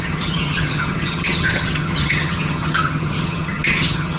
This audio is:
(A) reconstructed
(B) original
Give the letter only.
A